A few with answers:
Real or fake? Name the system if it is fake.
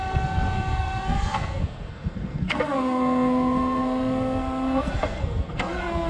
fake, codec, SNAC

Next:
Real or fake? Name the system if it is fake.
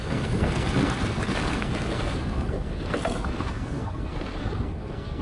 fake, codec, SNAC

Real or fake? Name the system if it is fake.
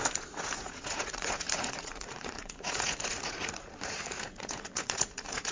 fake, vocoder, Vocos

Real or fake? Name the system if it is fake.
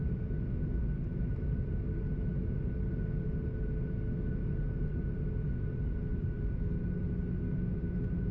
real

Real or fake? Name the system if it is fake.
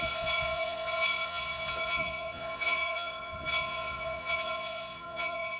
fake, vocoder, Vocos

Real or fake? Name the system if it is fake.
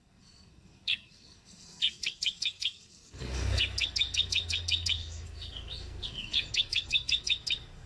fake, codec, SNAC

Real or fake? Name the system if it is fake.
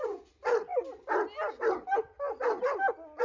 real